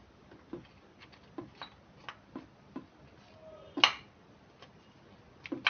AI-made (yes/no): no